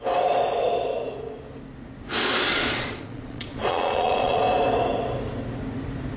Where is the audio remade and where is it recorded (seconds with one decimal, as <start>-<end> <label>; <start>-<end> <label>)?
0.0-2.5 recorded; 2.5-4.4 remade; 4.4-6.2 recorded